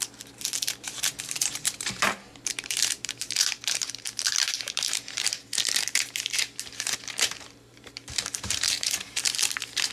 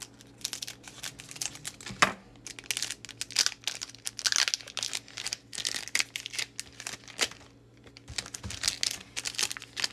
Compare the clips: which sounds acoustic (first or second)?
second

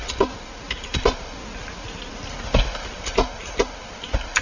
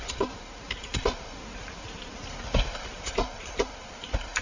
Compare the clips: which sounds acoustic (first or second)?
first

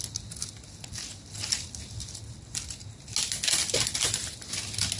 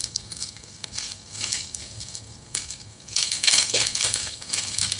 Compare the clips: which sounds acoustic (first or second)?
first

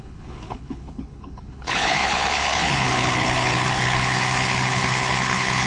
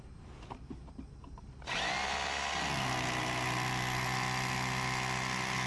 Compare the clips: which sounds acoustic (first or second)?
second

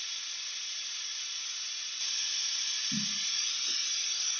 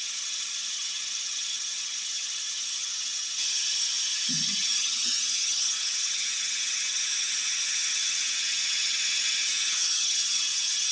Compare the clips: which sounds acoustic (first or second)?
first